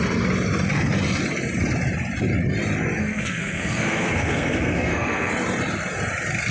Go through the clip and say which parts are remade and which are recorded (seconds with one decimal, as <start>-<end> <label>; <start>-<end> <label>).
0.0-3.0 recorded; 3.0-5.3 remade; 5.3-6.5 recorded